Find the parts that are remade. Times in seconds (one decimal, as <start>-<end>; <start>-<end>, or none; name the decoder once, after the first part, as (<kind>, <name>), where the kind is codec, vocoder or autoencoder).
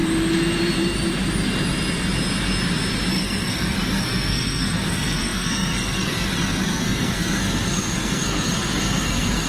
3.1-9.5 (codec, SNAC)